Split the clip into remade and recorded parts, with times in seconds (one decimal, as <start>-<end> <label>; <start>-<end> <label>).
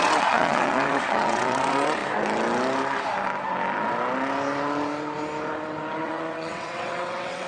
0.0-2.0 remade; 2.0-6.0 recorded; 6.0-7.5 remade